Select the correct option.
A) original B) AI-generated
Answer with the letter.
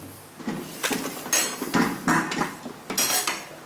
A